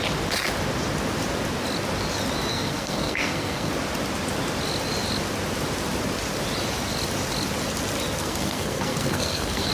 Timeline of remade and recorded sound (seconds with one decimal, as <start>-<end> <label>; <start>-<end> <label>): 0.0-2.5 recorded; 2.5-3.7 remade; 3.7-8.2 recorded; 8.2-9.7 remade